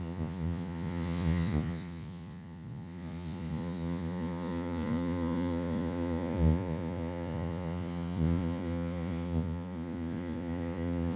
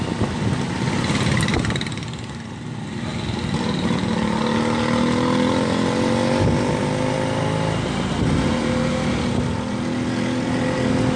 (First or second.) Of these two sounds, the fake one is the first